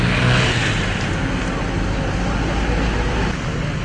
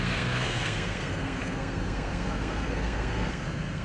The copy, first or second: second